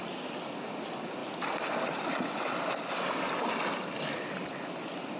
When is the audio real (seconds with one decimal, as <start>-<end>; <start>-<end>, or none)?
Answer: 0.0-5.2